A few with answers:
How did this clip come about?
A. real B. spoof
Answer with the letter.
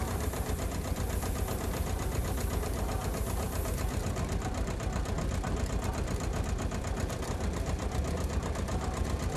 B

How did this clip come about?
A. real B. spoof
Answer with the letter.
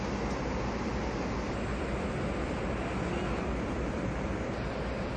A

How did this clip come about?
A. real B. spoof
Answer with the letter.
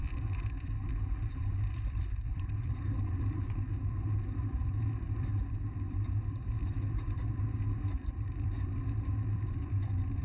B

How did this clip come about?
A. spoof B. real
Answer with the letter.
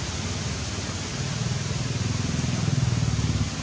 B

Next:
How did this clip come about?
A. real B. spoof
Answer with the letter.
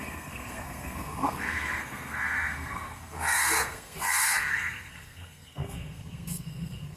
B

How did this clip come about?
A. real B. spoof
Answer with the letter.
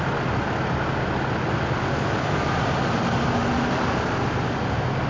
A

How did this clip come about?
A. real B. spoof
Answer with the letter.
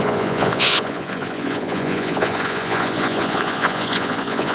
B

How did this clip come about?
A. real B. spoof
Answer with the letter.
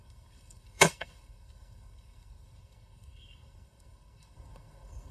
B